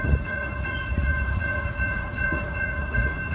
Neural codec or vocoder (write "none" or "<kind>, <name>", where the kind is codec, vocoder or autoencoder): vocoder, Vocos